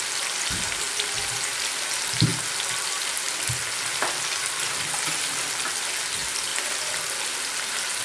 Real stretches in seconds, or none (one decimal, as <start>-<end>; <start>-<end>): 0.0-8.0